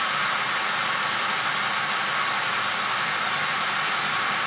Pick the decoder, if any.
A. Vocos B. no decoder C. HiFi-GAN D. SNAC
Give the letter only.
B